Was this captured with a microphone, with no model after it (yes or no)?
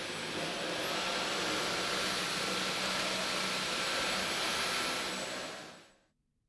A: yes